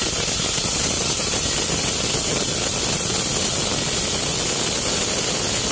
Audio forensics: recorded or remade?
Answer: recorded